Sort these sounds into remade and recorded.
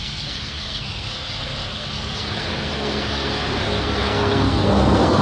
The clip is remade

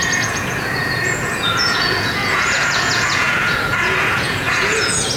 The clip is remade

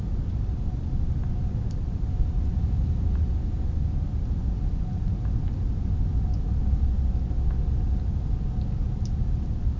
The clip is recorded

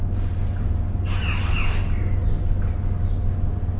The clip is recorded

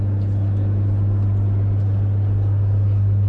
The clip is recorded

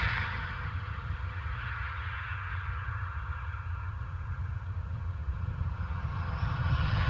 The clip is remade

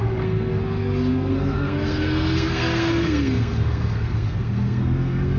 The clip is remade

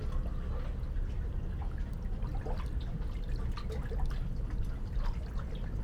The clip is recorded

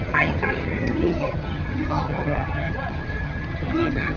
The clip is remade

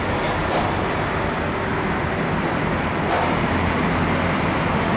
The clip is recorded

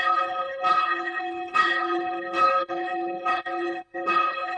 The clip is remade